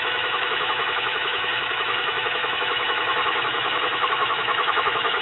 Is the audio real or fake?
fake